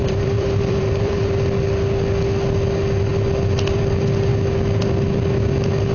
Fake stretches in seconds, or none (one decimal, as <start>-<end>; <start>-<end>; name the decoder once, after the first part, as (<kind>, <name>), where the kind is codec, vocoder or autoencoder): 0.0-1.3 (vocoder, BigVGAN v2)